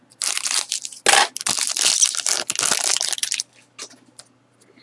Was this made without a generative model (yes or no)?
yes